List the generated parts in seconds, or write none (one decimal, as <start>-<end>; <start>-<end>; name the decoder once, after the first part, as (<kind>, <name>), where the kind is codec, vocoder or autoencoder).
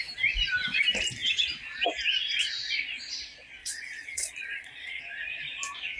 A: 3.6-5.0 (vocoder, Vocos)